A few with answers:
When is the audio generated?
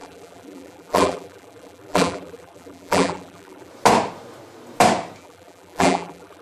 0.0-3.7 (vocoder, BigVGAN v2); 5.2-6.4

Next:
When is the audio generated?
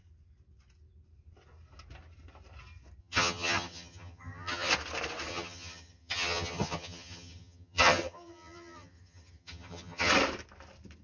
3.0-4.7 (vocoder, HiFi-GAN); 5.3-10.1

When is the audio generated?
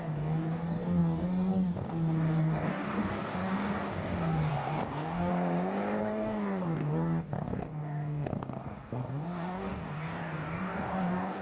0.0-5.3 (codec, DAC); 6.0-11.4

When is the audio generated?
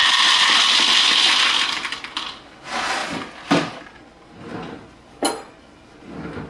0.0-0.6 (vocoder, BigVGAN v2); 3.0-3.8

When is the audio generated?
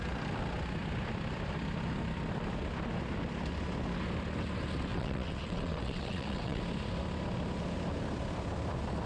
4.9-6.6 (vocoder, WaveNeXt)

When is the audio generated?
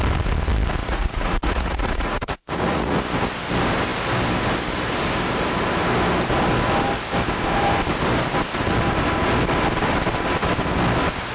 0.8-3.0 (vocoder, Vocos)